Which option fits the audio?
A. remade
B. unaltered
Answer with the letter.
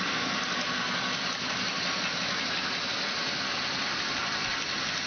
B